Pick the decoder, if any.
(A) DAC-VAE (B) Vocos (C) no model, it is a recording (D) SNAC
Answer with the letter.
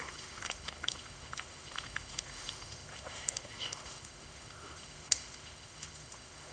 A